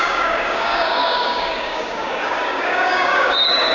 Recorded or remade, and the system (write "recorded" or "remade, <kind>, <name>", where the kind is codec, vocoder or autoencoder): remade, codec, DAC